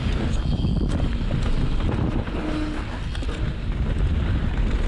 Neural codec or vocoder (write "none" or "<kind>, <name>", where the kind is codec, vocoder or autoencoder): none